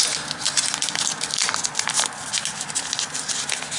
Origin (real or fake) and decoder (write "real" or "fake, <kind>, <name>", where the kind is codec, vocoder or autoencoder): real